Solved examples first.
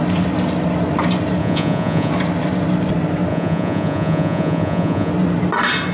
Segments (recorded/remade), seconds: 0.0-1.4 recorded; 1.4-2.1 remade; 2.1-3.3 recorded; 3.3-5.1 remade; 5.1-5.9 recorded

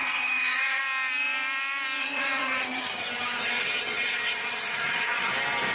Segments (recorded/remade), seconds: 0.0-0.8 remade; 0.8-2.0 recorded; 2.0-5.3 remade; 5.3-5.7 recorded

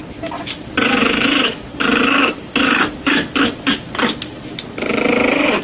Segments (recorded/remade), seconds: 0.0-1.0 recorded; 1.0-1.6 remade; 1.6-5.6 recorded

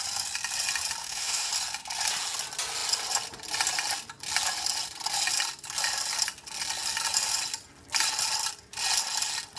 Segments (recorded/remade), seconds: 0.0-1.0 recorded; 1.0-1.5 remade; 1.5-9.6 recorded